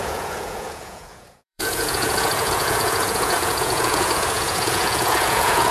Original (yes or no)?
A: no